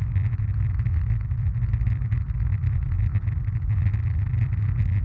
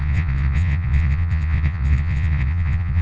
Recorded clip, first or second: first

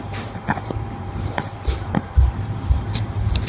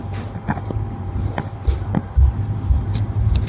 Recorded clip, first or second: second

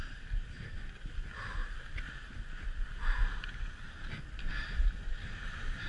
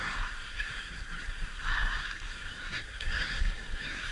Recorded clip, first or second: first